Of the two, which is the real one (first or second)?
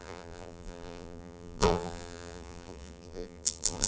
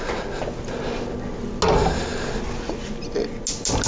second